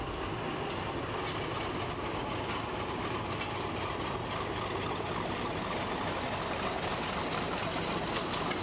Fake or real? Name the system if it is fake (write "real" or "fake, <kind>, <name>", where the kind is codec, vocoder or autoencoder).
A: real